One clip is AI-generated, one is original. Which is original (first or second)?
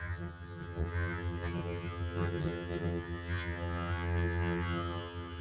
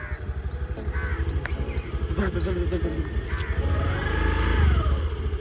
second